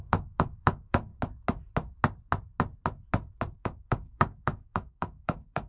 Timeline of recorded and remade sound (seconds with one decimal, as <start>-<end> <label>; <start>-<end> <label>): 0.0-1.1 remade; 1.1-3.6 recorded; 3.6-5.7 remade